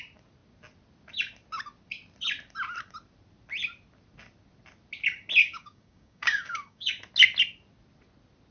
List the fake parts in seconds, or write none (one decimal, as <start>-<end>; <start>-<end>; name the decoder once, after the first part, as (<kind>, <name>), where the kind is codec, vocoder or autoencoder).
5.4-6.9 (codec, DAC)